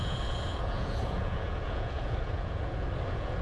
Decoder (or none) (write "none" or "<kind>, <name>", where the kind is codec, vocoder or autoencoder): vocoder, Vocos